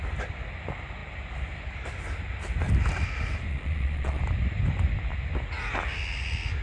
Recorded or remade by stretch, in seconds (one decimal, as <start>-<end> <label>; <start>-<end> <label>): 0.0-3.5 recorded; 3.5-4.2 remade; 4.2-6.6 recorded